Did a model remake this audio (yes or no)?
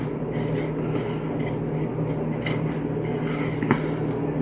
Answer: no